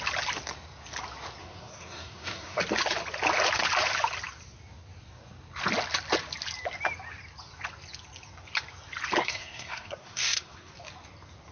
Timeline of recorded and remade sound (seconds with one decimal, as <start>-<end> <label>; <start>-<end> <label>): 0.0-1.4 recorded; 1.4-2.6 remade; 2.6-9.2 recorded; 9.2-10.7 remade; 10.7-11.5 recorded